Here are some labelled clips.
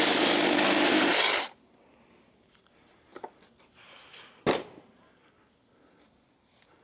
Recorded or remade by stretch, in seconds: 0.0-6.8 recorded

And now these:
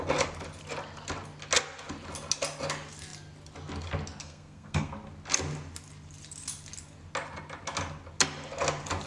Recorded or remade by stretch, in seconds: 0.0-4.2 recorded; 4.2-4.9 remade; 4.9-9.1 recorded

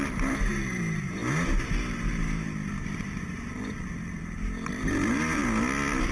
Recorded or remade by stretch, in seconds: 0.0-5.4 remade; 5.4-6.1 recorded

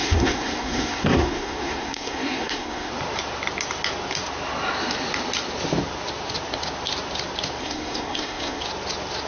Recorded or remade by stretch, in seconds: 0.0-2.9 remade; 2.9-7.6 recorded; 7.6-8.6 remade; 8.6-9.3 recorded

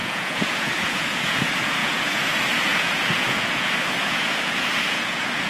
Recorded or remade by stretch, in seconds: 0.0-5.5 remade

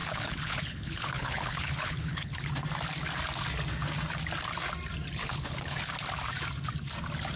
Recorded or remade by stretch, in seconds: 0.0-2.4 remade; 2.4-5.2 recorded; 5.2-5.8 remade; 5.8-7.4 recorded

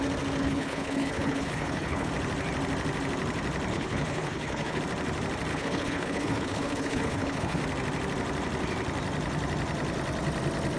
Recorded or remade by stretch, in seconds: 0.0-0.4 recorded; 0.4-2.1 remade; 2.1-3.7 recorded; 3.7-4.8 remade; 4.8-5.5 recorded; 5.5-7.6 remade; 7.6-10.8 recorded

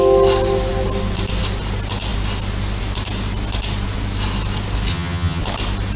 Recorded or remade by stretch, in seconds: 0.0-4.9 recorded; 4.9-5.4 remade; 5.4-6.0 recorded